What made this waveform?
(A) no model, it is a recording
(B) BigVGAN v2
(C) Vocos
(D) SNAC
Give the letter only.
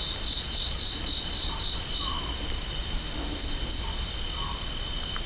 A